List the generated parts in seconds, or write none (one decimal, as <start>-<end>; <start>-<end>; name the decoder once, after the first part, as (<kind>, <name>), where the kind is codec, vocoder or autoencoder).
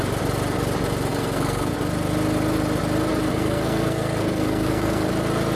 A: 1.1-1.7 (codec, SNAC); 3.3-5.1